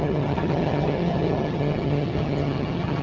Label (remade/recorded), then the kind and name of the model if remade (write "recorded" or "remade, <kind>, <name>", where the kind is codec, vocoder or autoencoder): remade, vocoder, HiFi-GAN